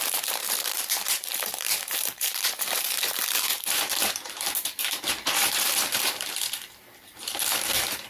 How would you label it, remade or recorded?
remade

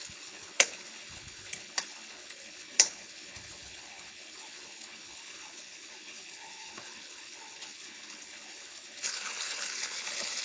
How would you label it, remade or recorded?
remade